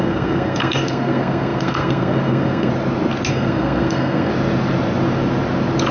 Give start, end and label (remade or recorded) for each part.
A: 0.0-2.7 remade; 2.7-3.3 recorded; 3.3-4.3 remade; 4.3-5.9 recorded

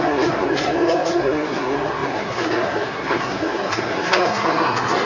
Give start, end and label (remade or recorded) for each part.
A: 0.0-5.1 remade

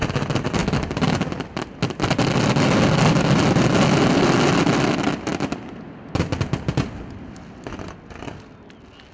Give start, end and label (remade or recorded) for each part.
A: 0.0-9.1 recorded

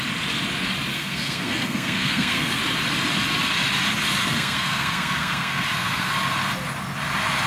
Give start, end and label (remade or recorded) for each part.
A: 0.0-0.9 recorded; 0.9-2.6 remade; 2.6-4.2 recorded; 4.2-6.1 remade; 6.1-7.5 recorded

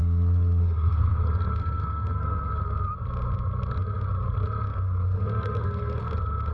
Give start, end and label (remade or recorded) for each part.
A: 0.0-1.2 remade; 1.2-1.6 recorded; 1.6-2.5 remade; 2.5-4.7 recorded; 4.7-6.0 remade; 6.0-6.5 recorded

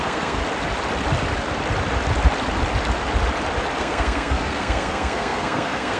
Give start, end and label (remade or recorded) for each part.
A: 0.0-0.4 remade; 0.4-3.8 recorded; 3.8-6.0 remade